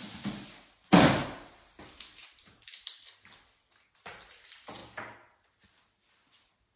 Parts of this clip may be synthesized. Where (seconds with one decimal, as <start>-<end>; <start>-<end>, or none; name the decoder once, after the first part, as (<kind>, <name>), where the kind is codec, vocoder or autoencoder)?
none